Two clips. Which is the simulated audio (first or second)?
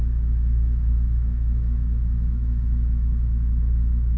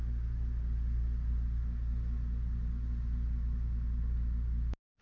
first